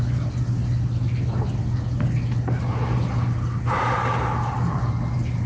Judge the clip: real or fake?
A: real